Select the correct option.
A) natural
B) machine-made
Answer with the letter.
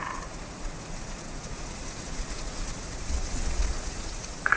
B